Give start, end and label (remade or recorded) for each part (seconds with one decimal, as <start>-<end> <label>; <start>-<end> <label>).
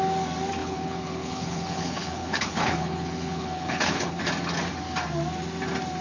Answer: 0.0-0.6 recorded; 0.6-4.2 remade; 4.2-6.0 recorded